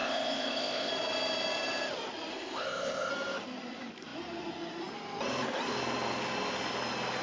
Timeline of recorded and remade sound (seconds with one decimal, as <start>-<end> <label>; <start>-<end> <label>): 0.0-0.9 remade; 0.9-2.3 recorded; 2.3-3.1 remade; 3.1-7.2 recorded